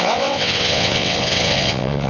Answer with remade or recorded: remade